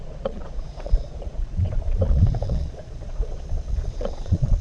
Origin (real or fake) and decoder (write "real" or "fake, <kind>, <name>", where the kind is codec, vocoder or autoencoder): fake, vocoder, Vocos